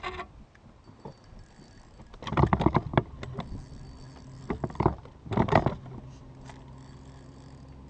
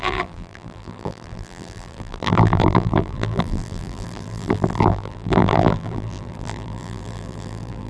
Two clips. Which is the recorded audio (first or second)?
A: first